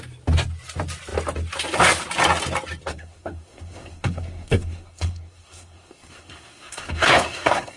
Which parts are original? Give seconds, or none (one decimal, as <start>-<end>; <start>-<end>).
0.0-2.9